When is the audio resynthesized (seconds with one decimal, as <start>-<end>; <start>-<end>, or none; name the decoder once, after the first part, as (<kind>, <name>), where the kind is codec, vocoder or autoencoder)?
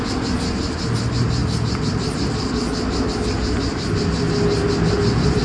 none